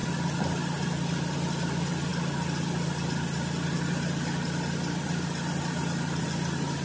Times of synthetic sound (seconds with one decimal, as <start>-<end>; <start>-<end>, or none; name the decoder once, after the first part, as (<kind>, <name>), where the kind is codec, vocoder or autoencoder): none